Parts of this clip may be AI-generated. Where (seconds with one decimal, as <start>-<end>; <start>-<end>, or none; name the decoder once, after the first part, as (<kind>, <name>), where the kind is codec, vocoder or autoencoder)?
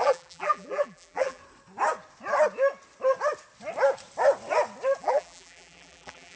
0.0-1.4 (vocoder, BigVGAN v2); 5.0-6.4